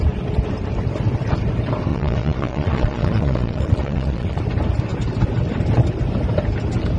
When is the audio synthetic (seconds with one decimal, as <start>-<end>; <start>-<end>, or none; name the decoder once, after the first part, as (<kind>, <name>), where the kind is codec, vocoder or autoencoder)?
1.9-4.4 (vocoder, Vocos)